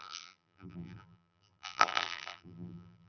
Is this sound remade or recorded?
remade